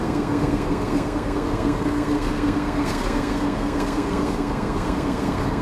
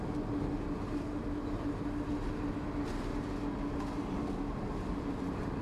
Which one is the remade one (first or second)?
first